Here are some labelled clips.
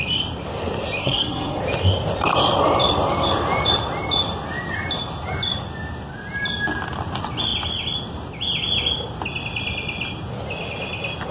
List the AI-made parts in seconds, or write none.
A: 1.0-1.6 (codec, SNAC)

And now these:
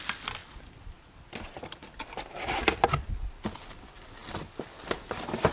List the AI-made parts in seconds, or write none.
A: none

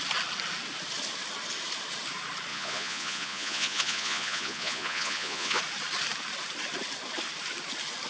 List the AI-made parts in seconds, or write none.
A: 2.5-5.6 (vocoder, Vocos)

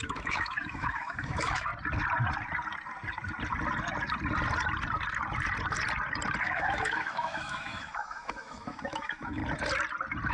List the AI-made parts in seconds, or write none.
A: 0.0-1.7 (autoencoder, DAC-VAE); 6.4-9.4

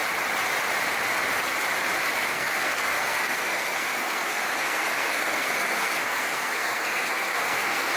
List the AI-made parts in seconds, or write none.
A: 2.2-8.0 (codec, SNAC)